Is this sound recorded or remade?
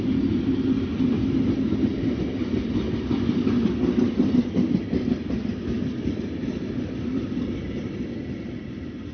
remade